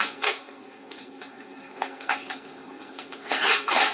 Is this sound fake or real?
fake